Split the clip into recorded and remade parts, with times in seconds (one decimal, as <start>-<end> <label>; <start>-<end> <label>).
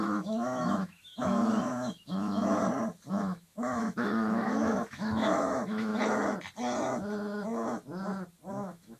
0.0-2.4 remade; 2.4-3.1 recorded; 3.1-5.9 remade; 5.9-8.5 recorded; 8.5-9.0 remade